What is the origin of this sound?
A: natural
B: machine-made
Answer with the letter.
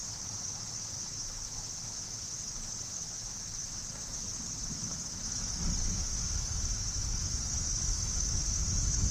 B